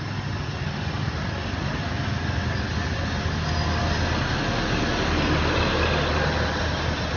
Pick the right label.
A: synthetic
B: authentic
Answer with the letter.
B